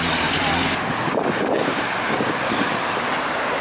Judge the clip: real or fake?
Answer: real